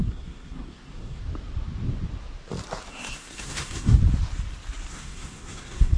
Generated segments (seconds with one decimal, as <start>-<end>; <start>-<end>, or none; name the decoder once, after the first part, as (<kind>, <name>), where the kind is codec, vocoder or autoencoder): 0.0-1.2 (codec, SNAC); 2.9-4.0; 4.9-6.0